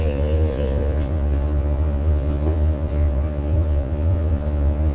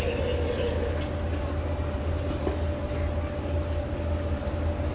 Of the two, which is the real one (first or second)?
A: second